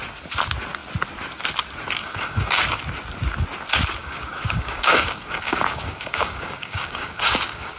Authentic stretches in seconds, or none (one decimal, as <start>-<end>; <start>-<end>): 0.0-2.0; 2.6-4.0